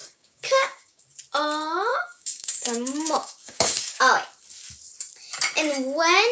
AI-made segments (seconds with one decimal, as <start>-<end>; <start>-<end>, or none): 0.0-1.0; 1.9-4.0